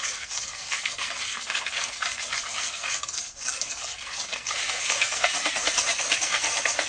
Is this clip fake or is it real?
fake